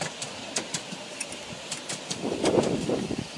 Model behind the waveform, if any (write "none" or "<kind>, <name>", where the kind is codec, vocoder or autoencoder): vocoder, BigVGAN v2